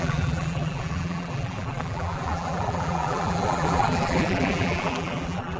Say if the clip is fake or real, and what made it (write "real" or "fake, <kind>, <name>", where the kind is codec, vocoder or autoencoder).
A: fake, vocoder, BigVGAN v2